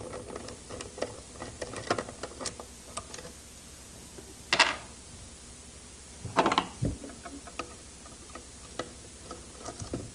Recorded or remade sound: recorded